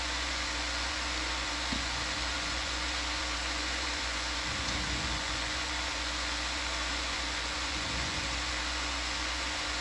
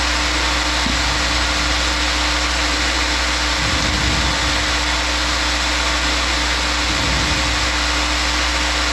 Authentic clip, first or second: second